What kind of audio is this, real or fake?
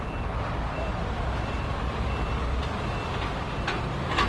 real